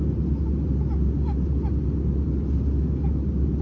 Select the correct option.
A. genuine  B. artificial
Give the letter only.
A